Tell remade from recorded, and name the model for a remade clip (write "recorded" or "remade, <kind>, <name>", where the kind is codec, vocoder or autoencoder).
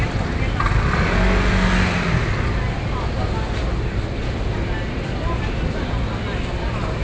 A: recorded